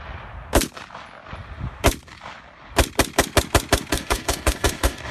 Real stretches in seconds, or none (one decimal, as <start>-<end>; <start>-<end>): 0.0-3.9